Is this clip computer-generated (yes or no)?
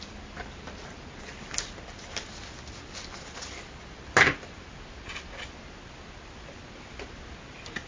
no